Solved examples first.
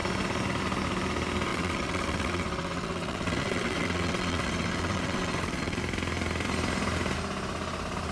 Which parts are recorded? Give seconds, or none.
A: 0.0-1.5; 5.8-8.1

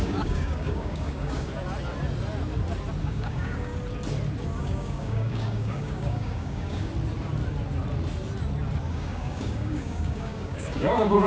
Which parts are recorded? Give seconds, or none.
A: 1.5-3.0; 3.7-4.6; 6.9-8.9

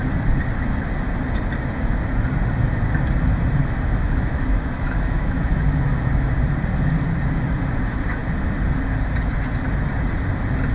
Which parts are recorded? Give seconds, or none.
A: 0.0-3.6; 6.3-10.7

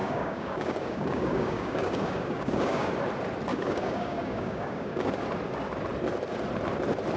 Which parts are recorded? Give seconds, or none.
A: 2.9-3.5; 5.1-7.2

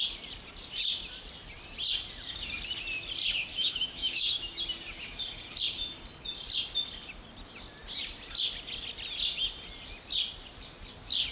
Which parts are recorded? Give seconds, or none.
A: 0.0-3.5; 4.6-11.3

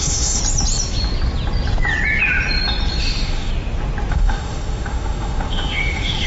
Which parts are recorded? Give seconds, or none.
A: 0.4-3.0; 3.5-4.1

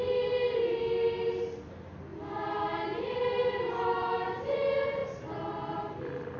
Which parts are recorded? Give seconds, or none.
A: 0.0-6.4

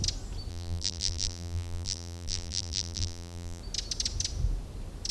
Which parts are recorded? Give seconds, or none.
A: 0.0-0.5; 3.6-5.1